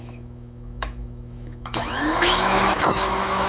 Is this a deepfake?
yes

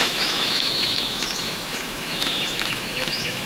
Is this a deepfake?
yes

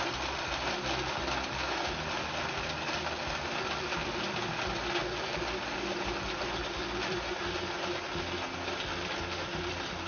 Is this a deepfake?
no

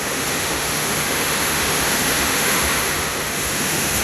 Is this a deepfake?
yes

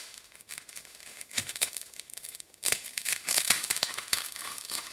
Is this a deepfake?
yes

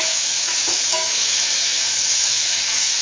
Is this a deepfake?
yes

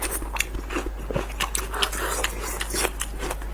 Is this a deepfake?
no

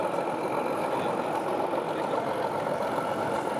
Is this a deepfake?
no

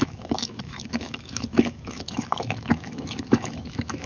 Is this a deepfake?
yes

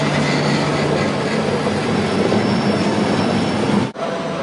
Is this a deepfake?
no